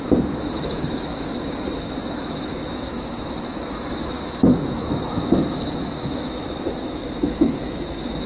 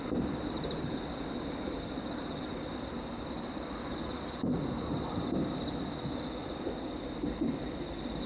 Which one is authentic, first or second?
second